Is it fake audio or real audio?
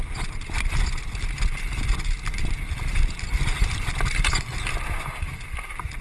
real